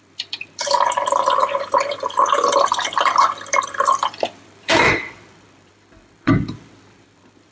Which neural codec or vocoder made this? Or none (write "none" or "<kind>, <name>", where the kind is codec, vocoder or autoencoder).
vocoder, BigVGAN v2